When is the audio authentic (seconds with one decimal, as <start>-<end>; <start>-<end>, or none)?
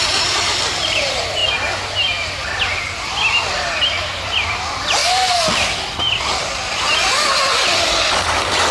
1.4-3.8